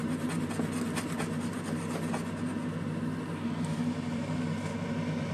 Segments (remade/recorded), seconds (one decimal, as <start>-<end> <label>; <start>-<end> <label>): 0.0-5.3 recorded

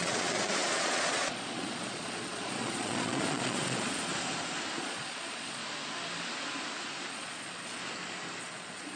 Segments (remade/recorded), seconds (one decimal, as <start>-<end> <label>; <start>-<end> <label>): 0.0-4.1 remade; 4.1-4.8 recorded; 4.8-5.6 remade; 5.6-7.1 recorded; 7.1-7.8 remade; 7.8-8.4 recorded; 8.4-9.0 remade